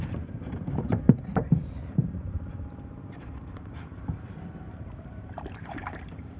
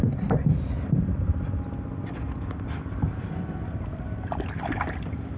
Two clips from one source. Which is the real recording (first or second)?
second